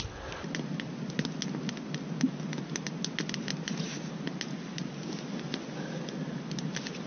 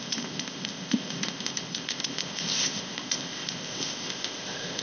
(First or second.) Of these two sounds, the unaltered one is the first